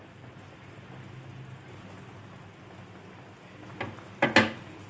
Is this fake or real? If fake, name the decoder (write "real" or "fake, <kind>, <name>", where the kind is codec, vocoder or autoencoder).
real